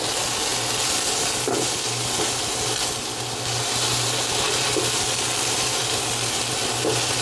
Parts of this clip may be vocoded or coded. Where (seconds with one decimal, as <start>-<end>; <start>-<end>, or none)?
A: none